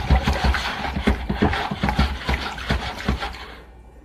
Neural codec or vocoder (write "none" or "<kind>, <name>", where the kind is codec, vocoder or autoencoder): none